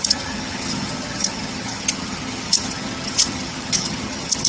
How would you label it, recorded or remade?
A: remade